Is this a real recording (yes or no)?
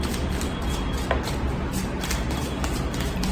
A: yes